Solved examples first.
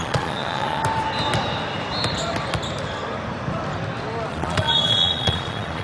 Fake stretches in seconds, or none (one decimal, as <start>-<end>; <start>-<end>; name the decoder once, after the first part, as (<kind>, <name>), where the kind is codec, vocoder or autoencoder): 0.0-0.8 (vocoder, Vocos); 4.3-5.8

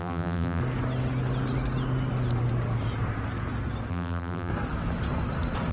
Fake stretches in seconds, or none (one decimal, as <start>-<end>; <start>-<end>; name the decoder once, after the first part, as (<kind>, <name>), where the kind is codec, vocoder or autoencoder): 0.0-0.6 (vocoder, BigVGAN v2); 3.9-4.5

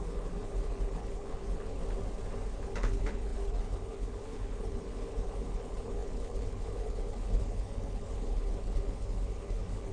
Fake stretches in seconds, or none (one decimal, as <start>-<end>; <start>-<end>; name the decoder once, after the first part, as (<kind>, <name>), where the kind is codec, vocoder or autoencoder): 0.0-1.8 (codec, HILCodec); 2.6-9.9

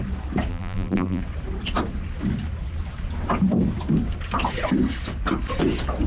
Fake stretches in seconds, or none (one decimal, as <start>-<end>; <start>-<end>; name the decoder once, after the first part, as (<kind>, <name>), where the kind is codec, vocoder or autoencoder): 0.5-1.2 (vocoder, BigVGAN v2)

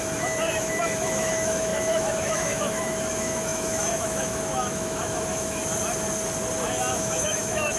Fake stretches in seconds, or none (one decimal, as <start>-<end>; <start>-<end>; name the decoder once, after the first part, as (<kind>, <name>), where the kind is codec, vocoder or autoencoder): 0.0-5.6 (autoencoder, DAC-VAE); 6.9-7.8

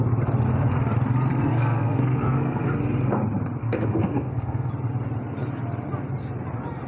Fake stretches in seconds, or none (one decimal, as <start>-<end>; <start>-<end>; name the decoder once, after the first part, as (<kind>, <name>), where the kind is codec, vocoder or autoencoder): 1.3-2.7 (codec, SNAC); 3.6-4.7

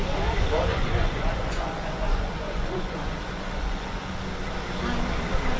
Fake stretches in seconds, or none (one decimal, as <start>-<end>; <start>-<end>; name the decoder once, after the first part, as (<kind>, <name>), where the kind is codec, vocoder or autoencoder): 0.7-4.1 (vocoder, Vocos)

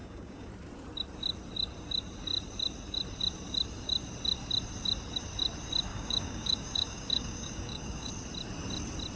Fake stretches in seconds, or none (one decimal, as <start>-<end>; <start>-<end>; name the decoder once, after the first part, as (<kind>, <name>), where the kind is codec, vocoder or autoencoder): 0.0-0.5 (codec, DAC); 5.9-8.1